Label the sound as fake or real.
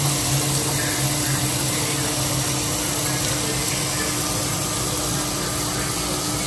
real